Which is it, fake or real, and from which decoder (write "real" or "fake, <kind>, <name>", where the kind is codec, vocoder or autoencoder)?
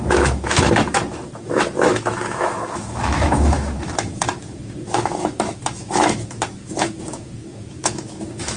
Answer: fake, autoencoder, DAC-VAE